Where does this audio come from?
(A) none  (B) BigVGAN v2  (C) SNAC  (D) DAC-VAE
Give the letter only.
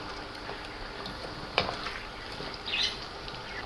A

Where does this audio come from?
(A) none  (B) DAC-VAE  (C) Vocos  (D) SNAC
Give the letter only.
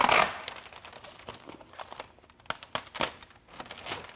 A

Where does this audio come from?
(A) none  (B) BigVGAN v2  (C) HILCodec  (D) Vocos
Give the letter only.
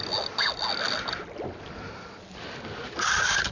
A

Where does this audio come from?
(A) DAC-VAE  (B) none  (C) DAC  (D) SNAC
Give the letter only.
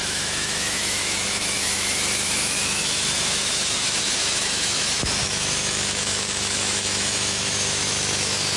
A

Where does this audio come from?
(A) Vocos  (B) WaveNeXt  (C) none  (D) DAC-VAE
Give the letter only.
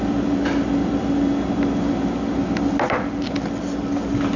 C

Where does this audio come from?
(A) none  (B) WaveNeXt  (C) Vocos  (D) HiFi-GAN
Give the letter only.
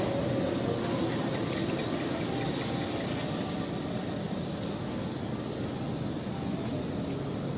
A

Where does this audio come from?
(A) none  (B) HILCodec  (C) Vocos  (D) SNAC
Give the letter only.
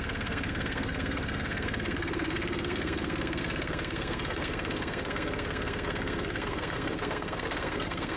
D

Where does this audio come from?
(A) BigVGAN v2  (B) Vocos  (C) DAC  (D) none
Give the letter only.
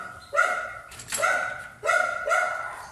A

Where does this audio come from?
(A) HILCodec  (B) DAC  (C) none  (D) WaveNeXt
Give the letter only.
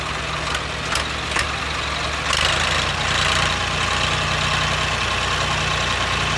C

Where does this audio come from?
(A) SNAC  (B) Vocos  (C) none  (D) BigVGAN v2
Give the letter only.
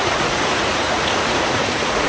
B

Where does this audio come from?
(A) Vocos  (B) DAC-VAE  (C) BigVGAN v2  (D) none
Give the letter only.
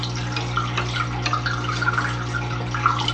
D